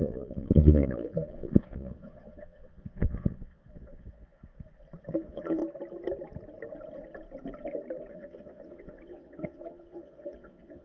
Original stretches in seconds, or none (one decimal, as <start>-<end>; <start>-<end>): 4.4-5.1; 5.6-8.1